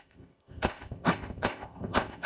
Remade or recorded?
remade